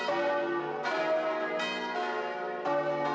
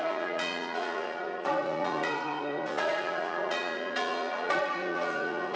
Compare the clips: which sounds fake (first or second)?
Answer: second